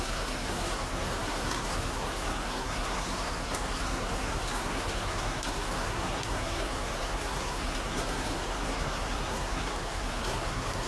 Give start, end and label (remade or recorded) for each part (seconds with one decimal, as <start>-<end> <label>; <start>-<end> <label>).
0.0-10.9 remade